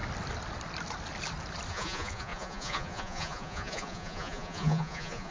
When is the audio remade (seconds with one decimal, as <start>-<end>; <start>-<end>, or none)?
1.7-5.3